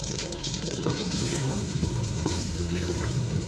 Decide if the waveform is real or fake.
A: fake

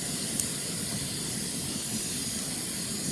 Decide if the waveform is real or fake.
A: real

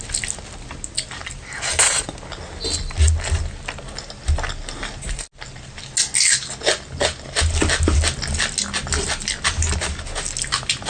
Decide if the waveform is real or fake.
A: real